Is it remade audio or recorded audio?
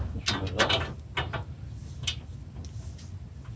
recorded